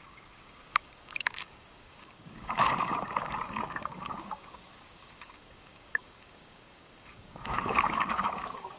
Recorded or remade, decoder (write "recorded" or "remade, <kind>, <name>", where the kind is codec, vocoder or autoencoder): remade, codec, DAC